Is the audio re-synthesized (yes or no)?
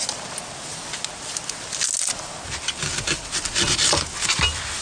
no